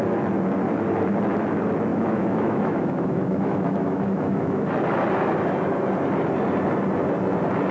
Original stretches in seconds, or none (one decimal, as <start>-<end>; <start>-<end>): 0.0-1.9; 4.7-7.7